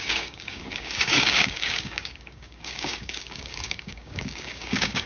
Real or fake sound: fake